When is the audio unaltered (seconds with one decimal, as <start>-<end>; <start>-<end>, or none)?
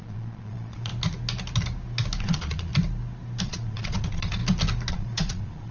0.9-2.2; 2.7-3.4; 4.4-4.9